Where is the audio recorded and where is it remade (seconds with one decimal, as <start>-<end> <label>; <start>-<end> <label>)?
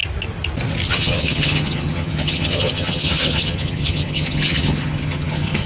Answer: 0.0-0.9 recorded; 0.9-5.7 remade